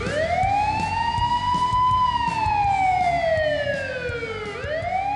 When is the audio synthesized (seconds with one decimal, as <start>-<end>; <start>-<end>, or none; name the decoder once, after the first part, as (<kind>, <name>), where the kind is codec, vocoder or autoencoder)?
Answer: none